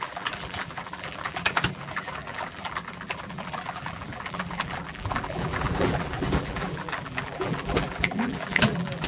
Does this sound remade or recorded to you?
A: remade